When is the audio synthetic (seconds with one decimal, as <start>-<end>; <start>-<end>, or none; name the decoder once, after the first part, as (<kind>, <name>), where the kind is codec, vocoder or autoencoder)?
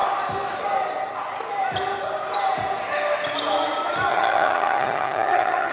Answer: 4.1-5.7 (vocoder, HiFi-GAN)